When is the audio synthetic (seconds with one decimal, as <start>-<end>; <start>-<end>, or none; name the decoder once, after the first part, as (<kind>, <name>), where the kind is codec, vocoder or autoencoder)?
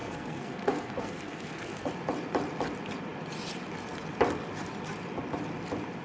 0.0-1.9 (codec, SNAC)